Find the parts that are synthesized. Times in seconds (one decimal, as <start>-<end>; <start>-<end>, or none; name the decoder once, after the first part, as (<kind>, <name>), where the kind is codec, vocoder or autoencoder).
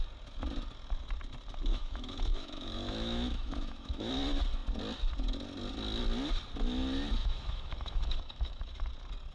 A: 1.7-4.1 (autoencoder, DAC-VAE); 7.2-8.8